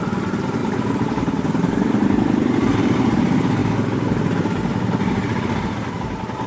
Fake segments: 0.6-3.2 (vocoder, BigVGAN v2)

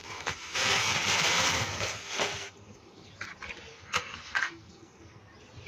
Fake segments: 0.0-3.1 (codec, SNAC); 3.7-5.2

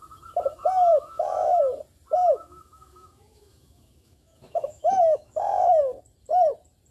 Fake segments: 0.9-1.6 (autoencoder, DAC-VAE); 2.2-5.8

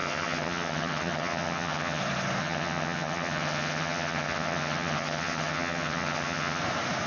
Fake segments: 0.0-2.0 (vocoder, HiFi-GAN); 2.4-6.6

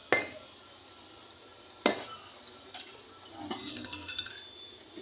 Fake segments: 3.7-4.3 (codec, SNAC)

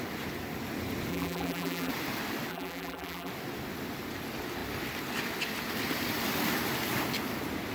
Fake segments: 1.1-1.9 (vocoder, BigVGAN v2); 2.5-3.3

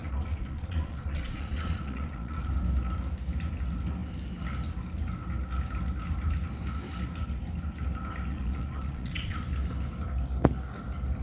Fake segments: 0.0-2.5 (vocoder, Vocos); 8.3-9.4

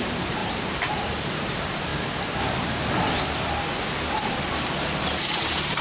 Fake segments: 0.0-1.9 (vocoder, BigVGAN v2); 5.0-5.8